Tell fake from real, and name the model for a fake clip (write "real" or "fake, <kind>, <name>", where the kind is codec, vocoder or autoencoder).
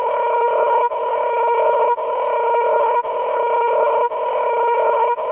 fake, codec, HILCodec